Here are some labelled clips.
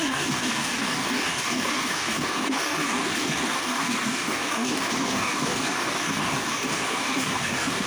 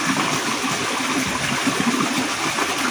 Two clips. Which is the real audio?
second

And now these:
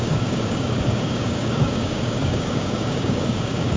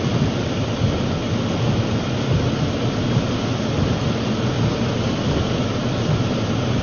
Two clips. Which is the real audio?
second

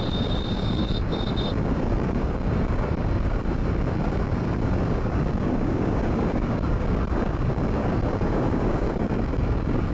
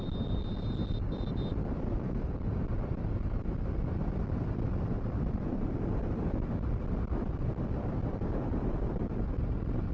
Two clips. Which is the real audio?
second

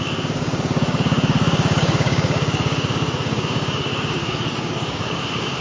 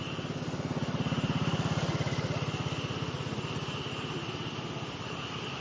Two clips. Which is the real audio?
second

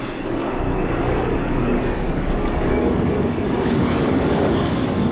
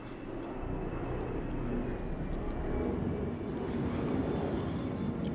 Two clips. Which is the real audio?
second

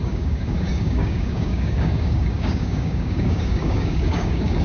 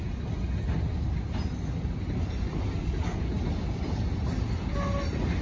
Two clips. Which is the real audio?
second